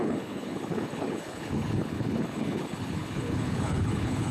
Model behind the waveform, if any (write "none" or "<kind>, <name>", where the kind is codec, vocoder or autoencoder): codec, HILCodec